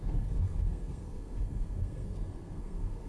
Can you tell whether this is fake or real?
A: fake